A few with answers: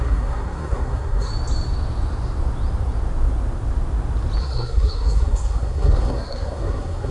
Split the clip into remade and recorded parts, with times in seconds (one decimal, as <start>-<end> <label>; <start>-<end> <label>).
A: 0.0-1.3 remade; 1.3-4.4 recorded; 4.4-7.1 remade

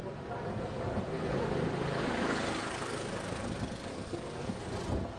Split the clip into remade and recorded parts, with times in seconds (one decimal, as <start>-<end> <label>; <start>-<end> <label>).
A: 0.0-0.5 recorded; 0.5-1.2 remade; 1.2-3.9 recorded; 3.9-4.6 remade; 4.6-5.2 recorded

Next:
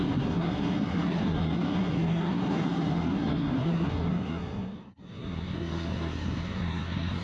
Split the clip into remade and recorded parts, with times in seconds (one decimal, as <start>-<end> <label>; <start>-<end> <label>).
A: 0.0-7.2 remade

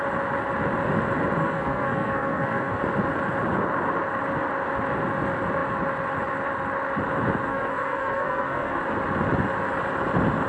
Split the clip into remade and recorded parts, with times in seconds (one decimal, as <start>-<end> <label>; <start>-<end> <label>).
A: 0.0-1.4 recorded; 1.4-2.8 remade; 2.8-7.5 recorded; 7.5-8.8 remade; 8.8-10.5 recorded

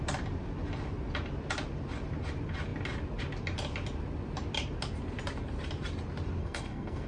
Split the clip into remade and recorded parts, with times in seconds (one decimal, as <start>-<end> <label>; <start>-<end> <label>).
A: 0.0-6.4 recorded; 6.4-7.1 remade

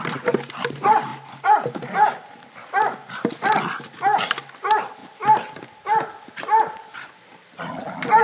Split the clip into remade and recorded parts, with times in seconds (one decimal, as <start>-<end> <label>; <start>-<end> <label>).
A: 0.0-8.2 recorded